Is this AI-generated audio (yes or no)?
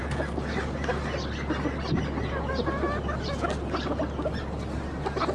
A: no